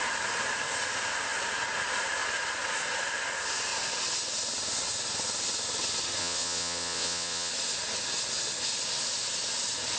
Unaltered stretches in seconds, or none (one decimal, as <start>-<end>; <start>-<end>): 0.0-6.2; 7.5-10.0

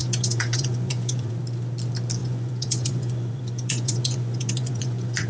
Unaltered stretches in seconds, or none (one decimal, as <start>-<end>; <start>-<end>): 1.4-2.2